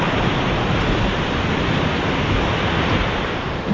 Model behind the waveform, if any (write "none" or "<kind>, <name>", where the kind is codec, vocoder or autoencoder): none